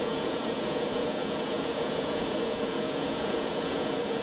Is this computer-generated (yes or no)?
yes